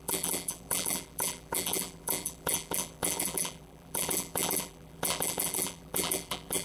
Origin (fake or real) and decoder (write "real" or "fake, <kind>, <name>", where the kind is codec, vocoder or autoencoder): fake, vocoder, BigVGAN v2